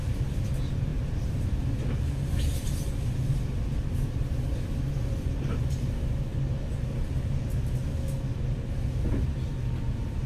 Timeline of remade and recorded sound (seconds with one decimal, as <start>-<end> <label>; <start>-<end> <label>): 0.0-0.9 recorded; 0.9-1.6 remade; 1.6-10.3 recorded